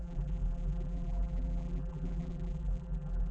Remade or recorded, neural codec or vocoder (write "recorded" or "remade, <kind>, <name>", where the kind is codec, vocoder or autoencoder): remade, vocoder, BigVGAN v2